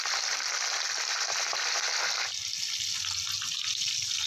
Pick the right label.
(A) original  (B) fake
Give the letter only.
A